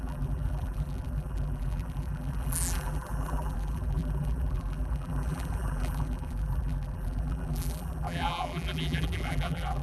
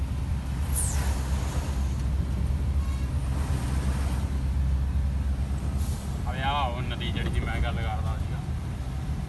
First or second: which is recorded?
second